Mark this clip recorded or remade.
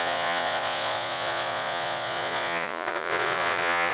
remade